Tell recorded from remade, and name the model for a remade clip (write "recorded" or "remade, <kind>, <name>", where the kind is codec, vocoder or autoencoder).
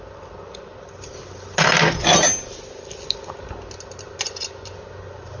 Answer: recorded